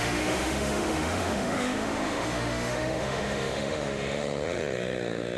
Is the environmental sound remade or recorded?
remade